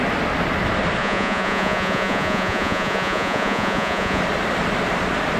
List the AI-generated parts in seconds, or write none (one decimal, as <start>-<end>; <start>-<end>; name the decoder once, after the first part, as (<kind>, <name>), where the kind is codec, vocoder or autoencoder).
1.0-4.2 (vocoder, Vocos)